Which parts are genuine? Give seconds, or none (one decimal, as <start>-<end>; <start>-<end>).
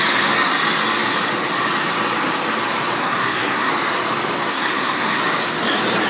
0.0-3.0; 3.7-4.5; 5.2-6.1